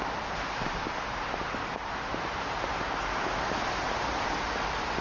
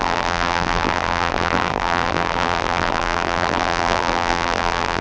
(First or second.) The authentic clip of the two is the first